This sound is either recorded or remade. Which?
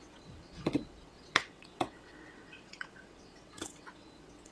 remade